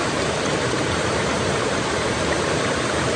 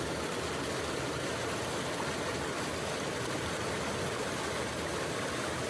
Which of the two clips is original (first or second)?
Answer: second